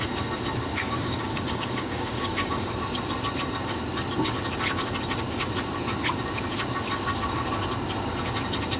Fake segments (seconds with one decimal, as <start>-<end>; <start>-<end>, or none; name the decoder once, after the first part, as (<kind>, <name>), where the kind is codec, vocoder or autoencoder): 0.7-2.7 (codec, DAC)